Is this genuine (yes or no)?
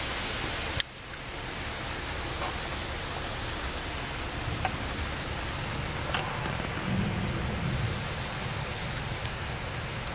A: yes